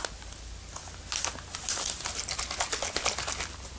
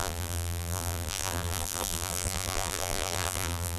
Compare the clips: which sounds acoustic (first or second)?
first